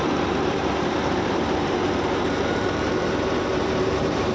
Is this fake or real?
fake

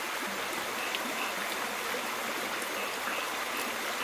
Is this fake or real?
real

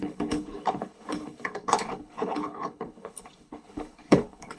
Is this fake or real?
fake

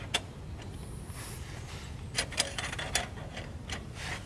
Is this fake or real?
real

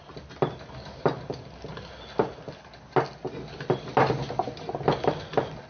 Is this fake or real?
real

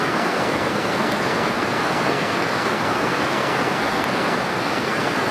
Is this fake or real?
fake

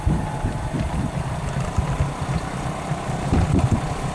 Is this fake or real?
real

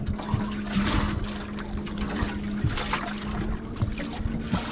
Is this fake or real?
real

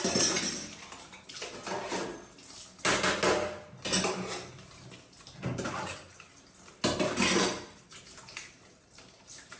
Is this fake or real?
real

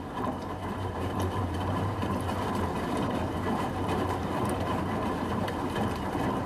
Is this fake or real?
fake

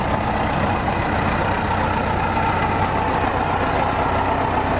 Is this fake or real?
real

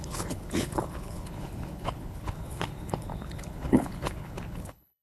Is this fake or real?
fake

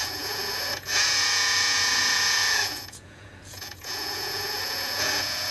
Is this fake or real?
fake